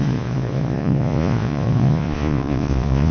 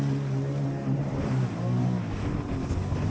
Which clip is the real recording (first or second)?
second